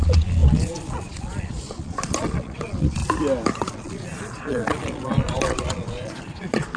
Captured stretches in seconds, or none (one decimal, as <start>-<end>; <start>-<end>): 3.0-3.6